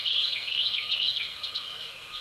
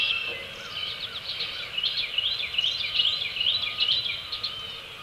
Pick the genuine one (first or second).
second